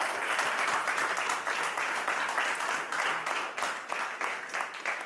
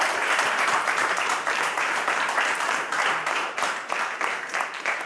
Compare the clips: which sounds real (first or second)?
first